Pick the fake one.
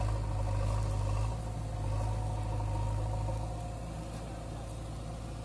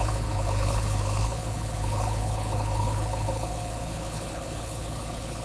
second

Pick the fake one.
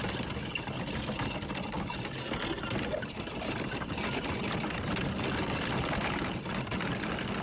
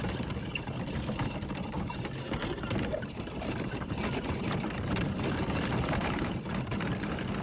second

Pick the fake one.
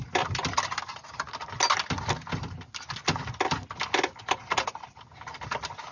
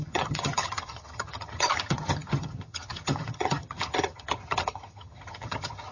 second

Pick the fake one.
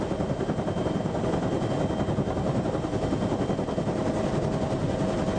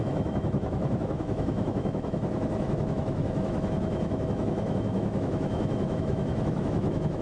second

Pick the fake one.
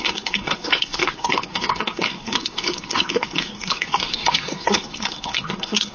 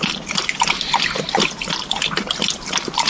first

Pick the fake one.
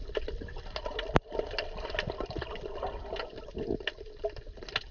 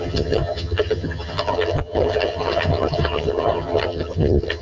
second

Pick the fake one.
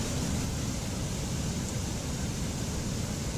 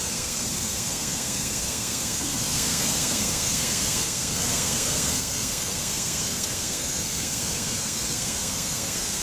second